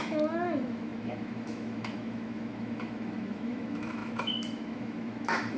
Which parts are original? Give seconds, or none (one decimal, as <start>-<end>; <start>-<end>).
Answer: none